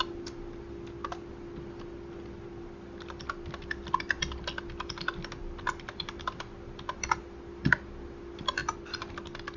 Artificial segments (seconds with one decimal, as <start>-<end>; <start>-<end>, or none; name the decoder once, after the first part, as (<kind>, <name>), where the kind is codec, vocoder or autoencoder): none